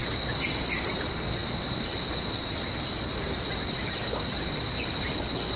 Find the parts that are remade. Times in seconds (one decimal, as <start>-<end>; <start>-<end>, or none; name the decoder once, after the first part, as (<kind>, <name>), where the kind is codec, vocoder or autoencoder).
none